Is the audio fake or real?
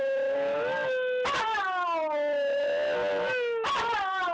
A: real